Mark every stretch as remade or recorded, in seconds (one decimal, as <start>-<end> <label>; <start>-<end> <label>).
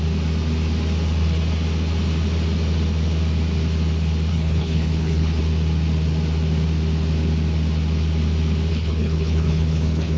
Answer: 0.0-4.3 recorded; 4.3-5.4 remade; 5.4-8.7 recorded; 8.7-10.2 remade